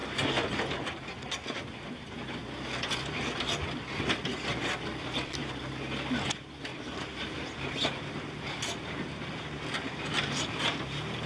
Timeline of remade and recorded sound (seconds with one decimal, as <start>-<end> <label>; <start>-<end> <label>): 0.0-11.3 recorded